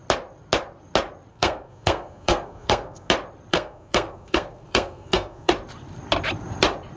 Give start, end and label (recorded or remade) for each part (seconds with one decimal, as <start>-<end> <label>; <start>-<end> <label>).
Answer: 0.0-1.3 recorded; 1.3-3.1 remade; 3.1-3.5 recorded; 3.5-5.5 remade; 5.5-7.0 recorded